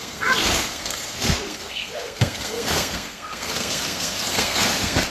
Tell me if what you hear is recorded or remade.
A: remade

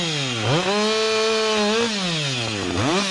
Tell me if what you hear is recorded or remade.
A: recorded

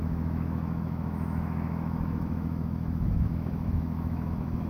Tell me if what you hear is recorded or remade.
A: remade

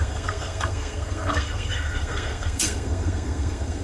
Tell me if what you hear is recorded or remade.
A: remade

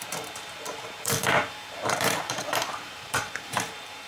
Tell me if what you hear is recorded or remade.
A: remade